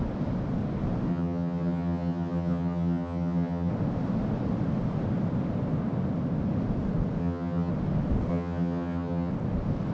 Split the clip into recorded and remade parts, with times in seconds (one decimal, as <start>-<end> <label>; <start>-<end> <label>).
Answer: 0.0-1.1 recorded; 1.1-3.7 remade; 3.7-7.2 recorded; 7.2-7.7 remade; 7.7-8.3 recorded; 8.3-9.3 remade; 9.3-9.9 recorded